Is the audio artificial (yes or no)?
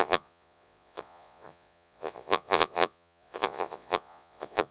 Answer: yes